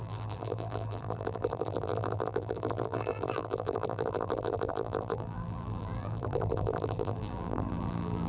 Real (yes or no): no